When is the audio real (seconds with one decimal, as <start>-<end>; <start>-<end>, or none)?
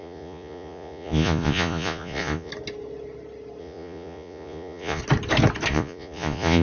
2.5-3.6; 5.0-5.7